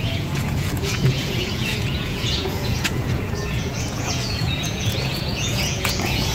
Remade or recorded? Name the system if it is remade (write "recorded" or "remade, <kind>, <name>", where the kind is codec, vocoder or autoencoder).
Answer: remade, vocoder, Vocos